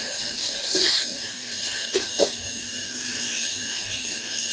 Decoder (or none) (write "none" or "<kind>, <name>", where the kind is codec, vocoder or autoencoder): codec, DAC